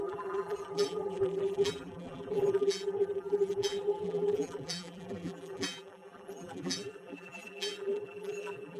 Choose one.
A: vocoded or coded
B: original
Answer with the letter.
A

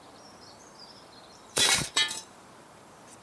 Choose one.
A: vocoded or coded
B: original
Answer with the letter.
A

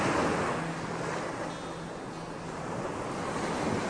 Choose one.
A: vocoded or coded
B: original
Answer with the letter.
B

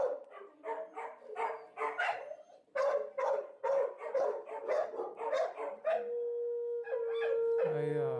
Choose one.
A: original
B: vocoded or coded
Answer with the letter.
A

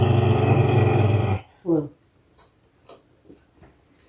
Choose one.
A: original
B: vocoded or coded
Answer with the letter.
A